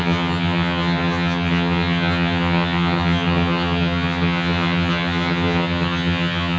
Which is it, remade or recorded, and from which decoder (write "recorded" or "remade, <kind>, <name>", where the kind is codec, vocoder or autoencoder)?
remade, vocoder, HiFi-GAN